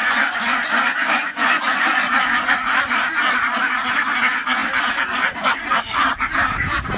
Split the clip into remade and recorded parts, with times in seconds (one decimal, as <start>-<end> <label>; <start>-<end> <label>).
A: 0.0-2.8 remade; 2.8-7.0 recorded